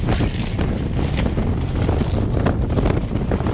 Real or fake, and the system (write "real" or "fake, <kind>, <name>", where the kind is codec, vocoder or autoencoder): real